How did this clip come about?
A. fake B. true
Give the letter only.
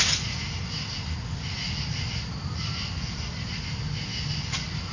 B